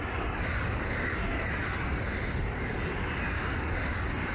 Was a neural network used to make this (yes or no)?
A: no